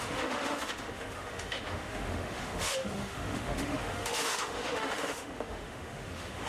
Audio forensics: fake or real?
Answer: fake